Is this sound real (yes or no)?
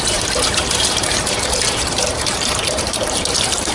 no